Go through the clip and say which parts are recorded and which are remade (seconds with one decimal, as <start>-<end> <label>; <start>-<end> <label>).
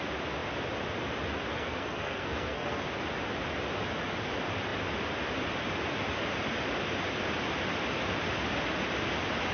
0.0-1.5 recorded; 1.5-2.8 remade; 2.8-9.5 recorded